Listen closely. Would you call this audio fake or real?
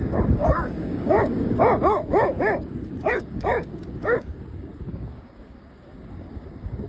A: fake